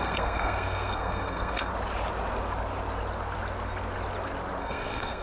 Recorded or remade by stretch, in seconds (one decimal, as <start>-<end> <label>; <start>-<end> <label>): 0.0-1.7 remade; 1.7-4.6 recorded; 4.6-5.2 remade